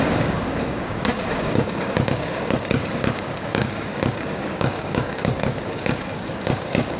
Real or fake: fake